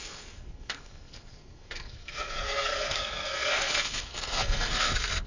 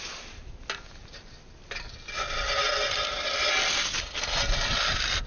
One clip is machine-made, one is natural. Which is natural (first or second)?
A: second